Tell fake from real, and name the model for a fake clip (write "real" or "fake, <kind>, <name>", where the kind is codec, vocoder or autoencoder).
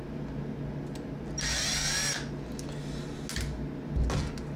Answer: real